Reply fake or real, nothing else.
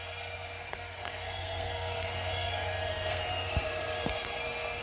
fake